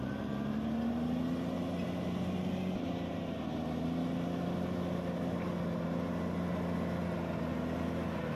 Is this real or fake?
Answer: real